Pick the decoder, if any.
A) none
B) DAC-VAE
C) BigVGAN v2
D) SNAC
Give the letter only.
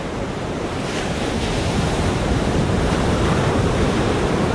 C